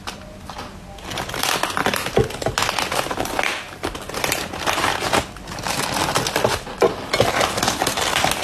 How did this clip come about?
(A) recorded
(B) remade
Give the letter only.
A